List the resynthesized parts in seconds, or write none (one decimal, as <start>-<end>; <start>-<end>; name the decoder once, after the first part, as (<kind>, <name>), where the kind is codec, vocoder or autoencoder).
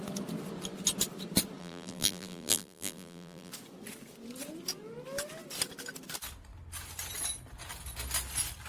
1.6-3.5 (vocoder, BigVGAN v2)